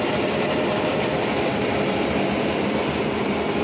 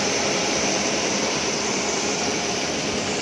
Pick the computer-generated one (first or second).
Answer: second